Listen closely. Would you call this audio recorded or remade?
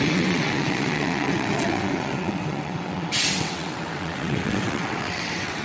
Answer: remade